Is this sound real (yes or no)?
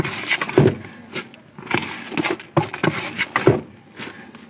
yes